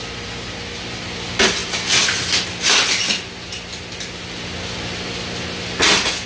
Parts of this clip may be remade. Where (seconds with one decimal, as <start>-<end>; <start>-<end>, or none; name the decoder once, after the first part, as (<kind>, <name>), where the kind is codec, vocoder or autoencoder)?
none